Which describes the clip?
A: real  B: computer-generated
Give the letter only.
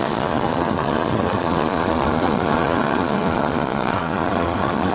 B